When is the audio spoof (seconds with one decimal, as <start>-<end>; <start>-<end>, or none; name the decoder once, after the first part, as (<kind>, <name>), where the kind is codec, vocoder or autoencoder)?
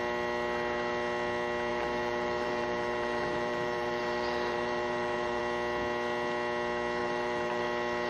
1.7-5.4 (vocoder, BigVGAN v2); 7.0-7.6